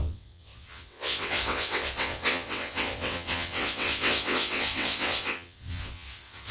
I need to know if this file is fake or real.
fake